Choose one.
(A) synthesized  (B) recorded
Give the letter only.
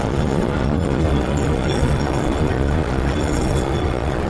A